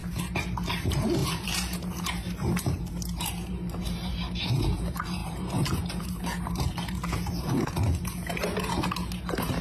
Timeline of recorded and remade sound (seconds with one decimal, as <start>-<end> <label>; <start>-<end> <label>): 0.0-9.6 remade